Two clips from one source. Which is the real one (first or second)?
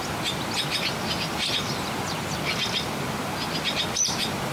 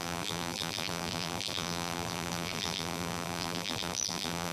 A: first